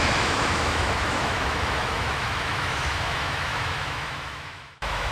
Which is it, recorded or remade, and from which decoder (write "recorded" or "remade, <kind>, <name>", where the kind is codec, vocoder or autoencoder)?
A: remade, autoencoder, DAC-VAE